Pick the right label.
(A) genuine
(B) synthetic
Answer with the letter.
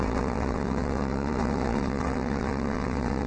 B